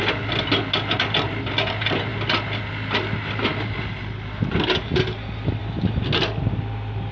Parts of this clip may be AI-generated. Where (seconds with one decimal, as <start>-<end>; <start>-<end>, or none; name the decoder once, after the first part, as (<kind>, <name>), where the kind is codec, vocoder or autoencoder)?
none